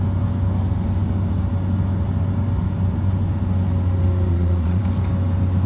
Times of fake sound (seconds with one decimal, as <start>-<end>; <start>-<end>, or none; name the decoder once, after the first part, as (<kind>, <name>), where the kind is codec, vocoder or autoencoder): 4.3-4.8 (vocoder, Vocos)